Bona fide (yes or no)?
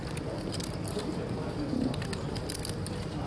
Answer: yes